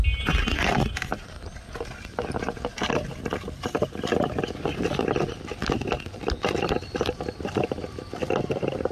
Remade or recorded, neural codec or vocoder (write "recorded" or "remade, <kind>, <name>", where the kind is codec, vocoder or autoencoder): recorded